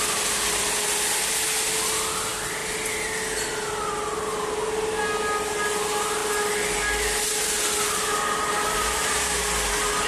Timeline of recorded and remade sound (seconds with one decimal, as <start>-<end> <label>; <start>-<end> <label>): 0.0-10.1 recorded